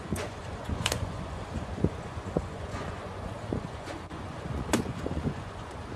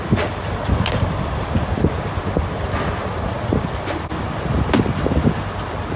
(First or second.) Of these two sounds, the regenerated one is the first